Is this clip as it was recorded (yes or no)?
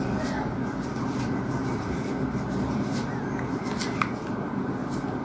yes